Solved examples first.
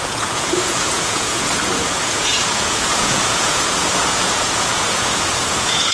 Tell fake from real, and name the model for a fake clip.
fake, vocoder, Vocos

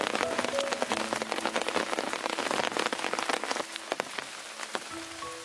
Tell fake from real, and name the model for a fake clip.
real